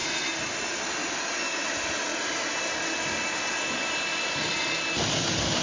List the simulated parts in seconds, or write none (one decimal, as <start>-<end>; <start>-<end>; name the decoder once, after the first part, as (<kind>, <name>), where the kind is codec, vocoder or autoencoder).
none